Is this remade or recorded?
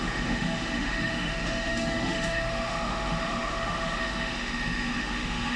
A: remade